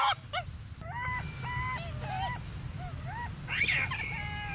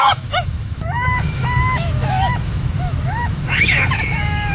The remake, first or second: second